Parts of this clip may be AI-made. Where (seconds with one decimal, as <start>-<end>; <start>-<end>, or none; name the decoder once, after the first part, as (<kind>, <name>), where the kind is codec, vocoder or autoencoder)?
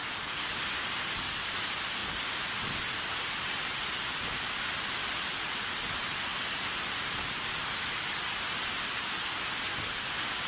none